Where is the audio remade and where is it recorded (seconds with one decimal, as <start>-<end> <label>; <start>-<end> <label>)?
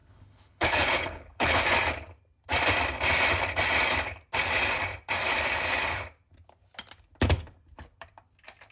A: 0.0-1.6 remade; 1.6-8.7 recorded